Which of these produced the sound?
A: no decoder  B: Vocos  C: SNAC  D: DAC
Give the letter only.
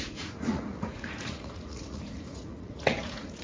B